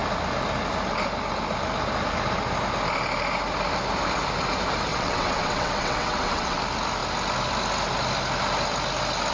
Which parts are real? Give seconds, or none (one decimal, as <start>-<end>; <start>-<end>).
0.0-4.9; 6.6-9.3

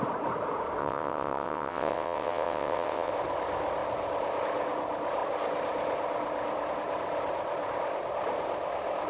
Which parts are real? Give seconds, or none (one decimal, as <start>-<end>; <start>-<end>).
0.0-0.8; 3.1-9.1

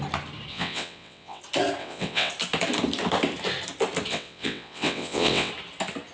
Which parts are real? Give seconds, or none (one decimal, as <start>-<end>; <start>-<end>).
0.0-0.5; 1.4-1.8; 2.3-4.1; 5.5-6.1

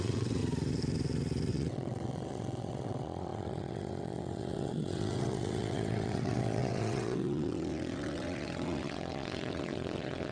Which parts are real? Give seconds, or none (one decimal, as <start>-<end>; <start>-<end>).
0.4-1.5

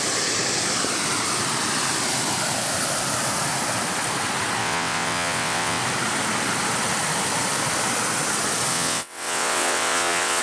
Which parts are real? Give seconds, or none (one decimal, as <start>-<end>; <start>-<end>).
0.0-4.6; 5.8-8.7